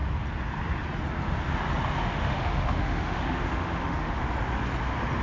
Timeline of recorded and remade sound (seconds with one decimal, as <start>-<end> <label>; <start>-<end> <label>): 0.0-2.0 recorded; 2.0-4.2 remade; 4.2-5.2 recorded